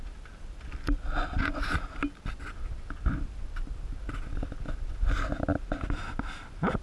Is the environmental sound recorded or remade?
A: recorded